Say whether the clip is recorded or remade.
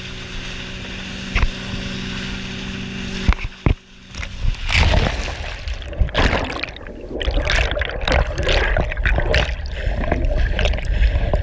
recorded